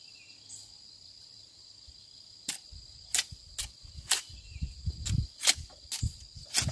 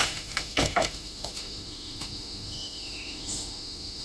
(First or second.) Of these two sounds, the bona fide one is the first